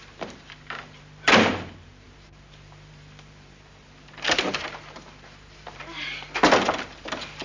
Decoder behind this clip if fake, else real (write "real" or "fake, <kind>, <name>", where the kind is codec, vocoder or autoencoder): fake, vocoder, BigVGAN v2